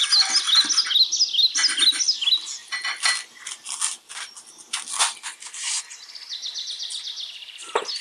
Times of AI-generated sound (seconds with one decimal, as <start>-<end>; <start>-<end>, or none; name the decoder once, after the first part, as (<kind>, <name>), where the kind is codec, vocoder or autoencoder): none